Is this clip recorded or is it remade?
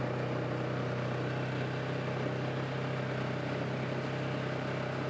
recorded